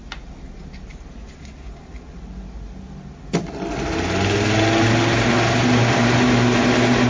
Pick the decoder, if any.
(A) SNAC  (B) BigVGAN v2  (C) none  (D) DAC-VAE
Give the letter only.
C